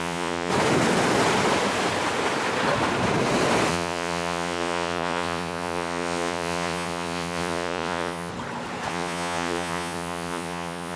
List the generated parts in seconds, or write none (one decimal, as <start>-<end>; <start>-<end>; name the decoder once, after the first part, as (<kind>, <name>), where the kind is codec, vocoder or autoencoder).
0.0-0.5 (vocoder, Vocos); 3.7-8.3; 8.9-11.0